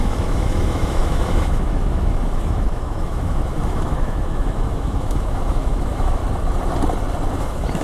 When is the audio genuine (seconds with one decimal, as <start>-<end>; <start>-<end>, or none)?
6.2-7.3